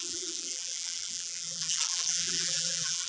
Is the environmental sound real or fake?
fake